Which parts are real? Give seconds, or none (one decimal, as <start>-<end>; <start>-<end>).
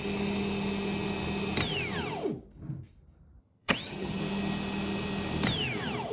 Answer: 0.0-3.4; 4.2-6.1